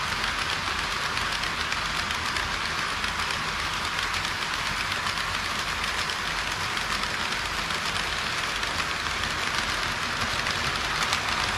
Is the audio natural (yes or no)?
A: yes